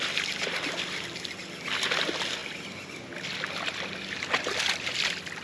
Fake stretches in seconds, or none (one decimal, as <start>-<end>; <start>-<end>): none